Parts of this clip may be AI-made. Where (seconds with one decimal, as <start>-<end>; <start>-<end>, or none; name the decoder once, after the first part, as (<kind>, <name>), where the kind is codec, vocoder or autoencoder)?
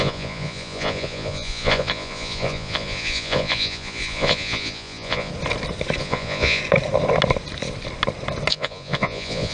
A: 0.0-5.3 (vocoder, Vocos); 6.0-6.6; 8.5-9.5